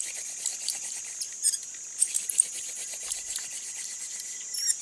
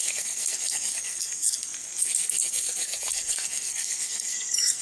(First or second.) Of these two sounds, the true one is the first